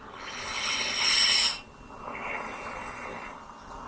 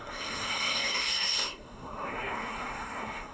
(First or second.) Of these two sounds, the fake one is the second